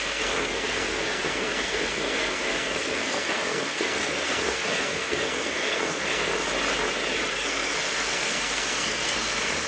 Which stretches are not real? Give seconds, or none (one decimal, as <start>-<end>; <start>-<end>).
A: 0.0-6.3; 7.3-9.7